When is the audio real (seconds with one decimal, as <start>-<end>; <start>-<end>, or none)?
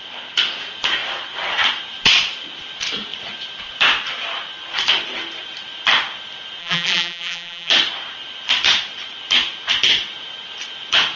0.0-6.6; 7.7-11.2